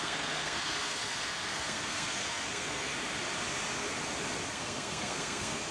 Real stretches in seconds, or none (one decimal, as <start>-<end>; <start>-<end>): 2.9-4.5